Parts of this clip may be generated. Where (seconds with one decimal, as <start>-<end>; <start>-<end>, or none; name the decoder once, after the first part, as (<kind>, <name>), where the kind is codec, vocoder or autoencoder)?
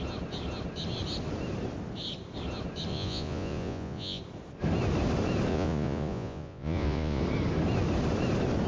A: 2.9-4.2 (vocoder, Vocos); 5.5-7.2